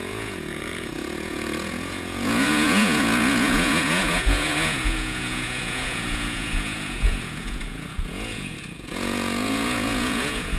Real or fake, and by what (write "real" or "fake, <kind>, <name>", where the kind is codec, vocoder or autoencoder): fake, vocoder, Vocos